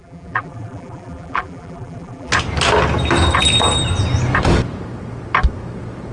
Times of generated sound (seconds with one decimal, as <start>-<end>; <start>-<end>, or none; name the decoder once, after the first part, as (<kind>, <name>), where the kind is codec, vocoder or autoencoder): 0.0-2.3 (vocoder, BigVGAN v2)